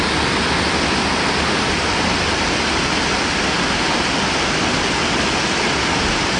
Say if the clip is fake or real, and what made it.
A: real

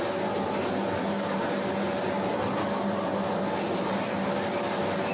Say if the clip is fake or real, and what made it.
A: real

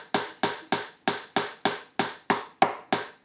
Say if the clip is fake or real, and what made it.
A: real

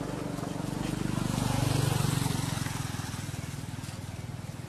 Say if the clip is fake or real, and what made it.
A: real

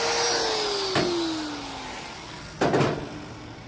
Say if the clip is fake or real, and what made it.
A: real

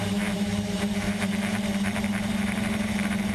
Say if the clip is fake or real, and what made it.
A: fake, vocoder, BigVGAN v2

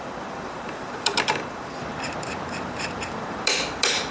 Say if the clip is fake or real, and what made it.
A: fake, vocoder, BigVGAN v2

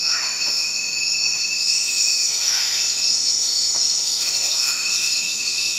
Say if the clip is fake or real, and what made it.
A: fake, autoencoder, DAC-VAE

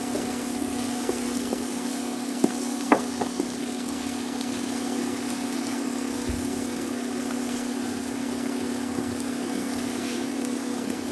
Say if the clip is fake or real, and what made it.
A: fake, codec, SNAC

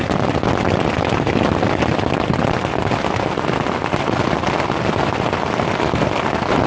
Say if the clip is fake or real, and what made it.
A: real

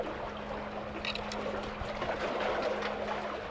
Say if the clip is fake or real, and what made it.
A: real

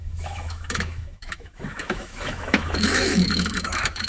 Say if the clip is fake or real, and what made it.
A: fake, autoencoder, DAC-VAE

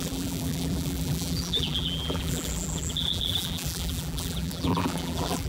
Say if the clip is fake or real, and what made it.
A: fake, vocoder, BigVGAN v2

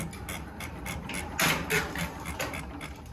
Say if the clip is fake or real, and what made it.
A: real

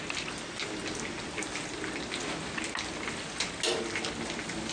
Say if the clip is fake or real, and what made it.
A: real